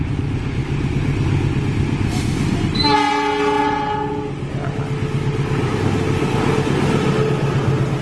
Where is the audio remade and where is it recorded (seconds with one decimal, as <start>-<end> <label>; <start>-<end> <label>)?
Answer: 0.0-8.0 recorded